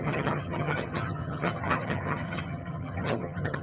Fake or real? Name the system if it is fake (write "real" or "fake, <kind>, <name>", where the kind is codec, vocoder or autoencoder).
fake, vocoder, HiFi-GAN